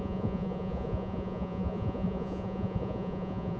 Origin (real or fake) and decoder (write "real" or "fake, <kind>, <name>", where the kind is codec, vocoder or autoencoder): fake, vocoder, Vocos